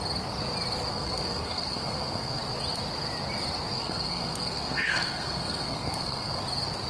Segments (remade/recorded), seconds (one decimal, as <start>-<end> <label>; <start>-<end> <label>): 0.0-0.9 recorded; 0.9-2.4 remade; 2.4-3.7 recorded; 3.7-6.4 remade; 6.4-6.9 recorded